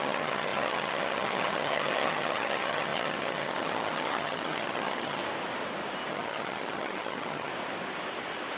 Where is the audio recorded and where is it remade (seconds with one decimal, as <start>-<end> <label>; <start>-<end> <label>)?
0.0-5.2 remade; 5.2-6.1 recorded; 6.1-7.5 remade; 7.5-8.6 recorded